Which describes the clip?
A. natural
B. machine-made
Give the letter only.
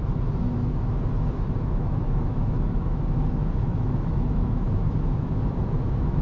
B